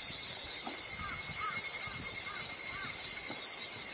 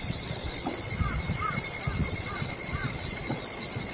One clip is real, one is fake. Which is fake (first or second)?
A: second